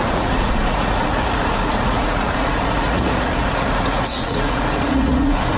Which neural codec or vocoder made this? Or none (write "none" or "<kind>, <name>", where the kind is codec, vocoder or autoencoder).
vocoder, Vocos